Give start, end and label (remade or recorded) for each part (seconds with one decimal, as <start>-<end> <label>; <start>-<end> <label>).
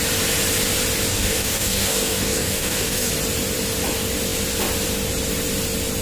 0.0-1.1 recorded; 1.1-3.1 remade; 3.1-6.0 recorded